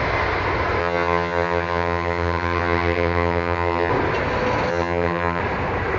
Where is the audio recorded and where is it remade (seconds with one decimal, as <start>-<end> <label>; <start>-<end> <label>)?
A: 0.0-0.8 recorded; 0.8-3.9 remade; 3.9-4.7 recorded; 4.7-5.4 remade; 5.4-6.0 recorded